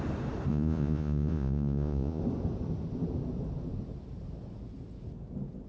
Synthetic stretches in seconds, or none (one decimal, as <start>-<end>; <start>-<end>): 0.5-2.2